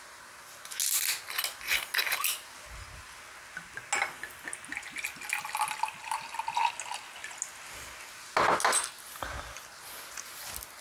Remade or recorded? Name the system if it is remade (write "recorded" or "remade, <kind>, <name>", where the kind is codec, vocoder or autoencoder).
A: recorded